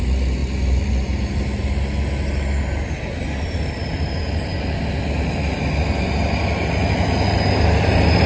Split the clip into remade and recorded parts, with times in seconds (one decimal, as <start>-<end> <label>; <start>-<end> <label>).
0.0-8.3 recorded